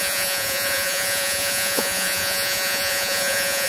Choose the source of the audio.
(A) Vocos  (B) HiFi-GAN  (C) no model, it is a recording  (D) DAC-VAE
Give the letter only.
A